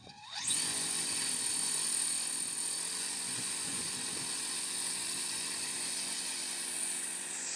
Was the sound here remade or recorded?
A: remade